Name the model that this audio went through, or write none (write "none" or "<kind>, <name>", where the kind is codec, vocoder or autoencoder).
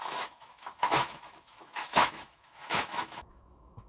autoencoder, DAC-VAE